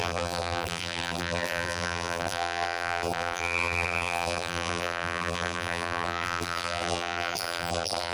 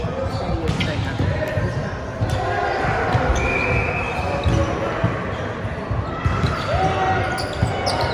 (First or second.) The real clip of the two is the second